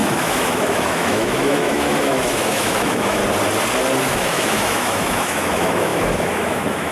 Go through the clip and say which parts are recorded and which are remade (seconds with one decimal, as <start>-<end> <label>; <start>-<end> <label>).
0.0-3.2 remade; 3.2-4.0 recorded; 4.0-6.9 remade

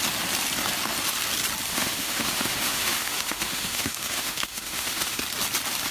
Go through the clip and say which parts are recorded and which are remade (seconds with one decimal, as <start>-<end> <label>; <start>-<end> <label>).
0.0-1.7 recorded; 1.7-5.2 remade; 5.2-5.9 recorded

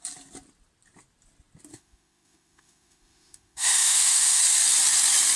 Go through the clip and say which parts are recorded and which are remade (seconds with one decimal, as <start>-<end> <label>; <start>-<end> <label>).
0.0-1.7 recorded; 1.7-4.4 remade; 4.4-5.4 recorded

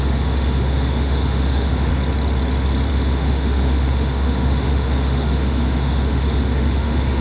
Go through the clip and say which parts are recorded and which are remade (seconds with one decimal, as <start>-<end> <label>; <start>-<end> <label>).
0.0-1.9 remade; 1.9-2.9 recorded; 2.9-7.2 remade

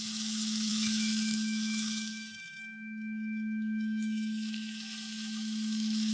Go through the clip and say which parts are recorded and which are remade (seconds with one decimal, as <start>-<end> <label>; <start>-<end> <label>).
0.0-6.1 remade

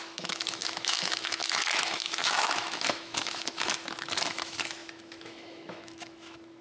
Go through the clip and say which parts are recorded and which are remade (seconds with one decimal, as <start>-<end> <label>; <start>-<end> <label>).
0.0-6.6 remade